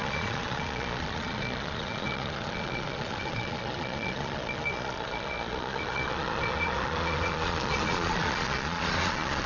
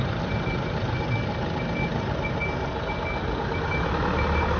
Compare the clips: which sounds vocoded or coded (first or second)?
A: first